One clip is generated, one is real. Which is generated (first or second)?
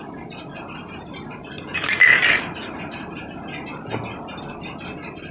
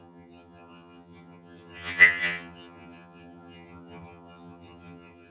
second